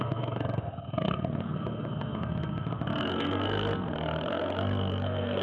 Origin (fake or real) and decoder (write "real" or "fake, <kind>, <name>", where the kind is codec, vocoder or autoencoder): fake, codec, SNAC